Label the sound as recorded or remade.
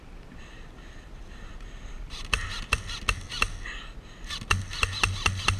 recorded